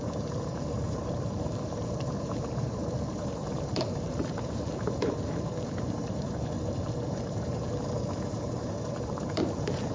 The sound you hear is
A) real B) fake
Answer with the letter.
B